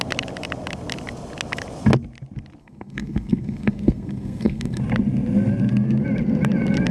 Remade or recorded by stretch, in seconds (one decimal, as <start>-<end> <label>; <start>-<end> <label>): 0.0-2.6 recorded; 2.6-4.8 remade; 4.8-6.9 recorded